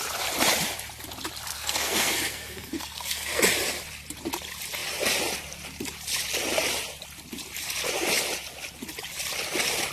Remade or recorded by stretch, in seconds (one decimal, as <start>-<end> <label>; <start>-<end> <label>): 0.0-1.5 recorded; 1.5-3.4 remade; 3.4-9.9 recorded